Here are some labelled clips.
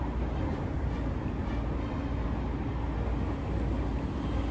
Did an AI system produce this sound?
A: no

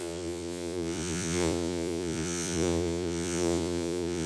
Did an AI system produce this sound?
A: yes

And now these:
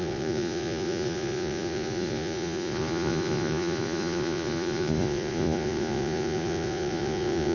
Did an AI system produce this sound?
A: yes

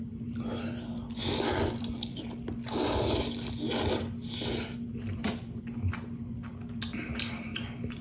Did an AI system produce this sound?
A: no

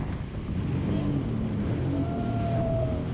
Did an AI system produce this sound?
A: no